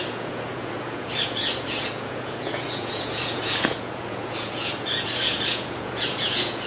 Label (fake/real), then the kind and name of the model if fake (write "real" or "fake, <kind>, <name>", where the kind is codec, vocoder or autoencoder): fake, vocoder, Vocos